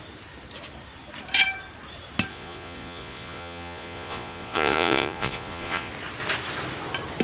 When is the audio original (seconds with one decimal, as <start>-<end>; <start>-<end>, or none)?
0.0-2.3; 5.9-7.2